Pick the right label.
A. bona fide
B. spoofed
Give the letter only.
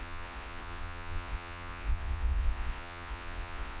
B